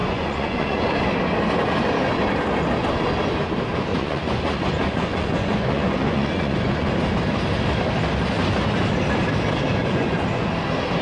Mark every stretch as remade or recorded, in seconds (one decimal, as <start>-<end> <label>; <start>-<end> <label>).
0.0-1.0 remade; 1.0-3.9 recorded; 3.9-6.9 remade; 6.9-9.8 recorded; 9.8-10.5 remade; 10.5-11.0 recorded